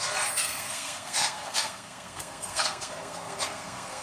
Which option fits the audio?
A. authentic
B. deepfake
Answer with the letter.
B